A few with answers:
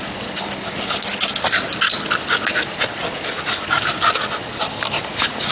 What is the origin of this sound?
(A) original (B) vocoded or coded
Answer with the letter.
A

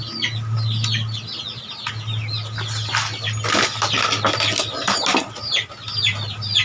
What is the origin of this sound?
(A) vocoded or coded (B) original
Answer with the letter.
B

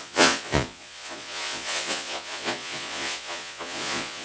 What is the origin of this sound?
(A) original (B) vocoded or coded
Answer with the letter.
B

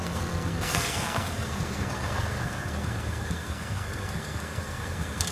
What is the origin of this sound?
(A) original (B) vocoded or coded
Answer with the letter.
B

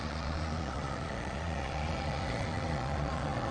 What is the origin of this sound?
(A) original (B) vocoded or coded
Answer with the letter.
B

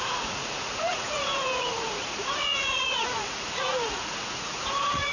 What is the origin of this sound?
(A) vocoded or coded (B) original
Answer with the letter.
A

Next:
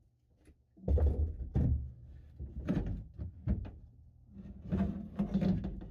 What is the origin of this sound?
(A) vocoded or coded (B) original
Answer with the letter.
B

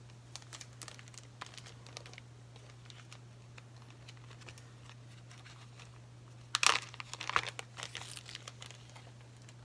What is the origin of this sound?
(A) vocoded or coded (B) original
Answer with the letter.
B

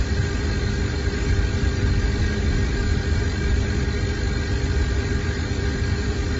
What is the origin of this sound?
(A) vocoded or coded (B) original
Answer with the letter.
B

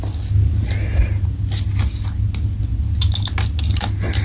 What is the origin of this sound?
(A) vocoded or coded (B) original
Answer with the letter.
B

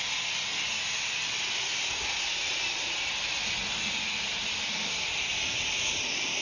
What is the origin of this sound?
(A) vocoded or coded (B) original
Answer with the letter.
B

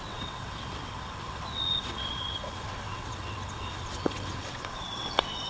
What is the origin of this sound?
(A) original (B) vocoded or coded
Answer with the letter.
B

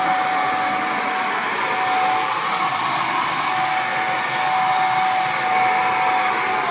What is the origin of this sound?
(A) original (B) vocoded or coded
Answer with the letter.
A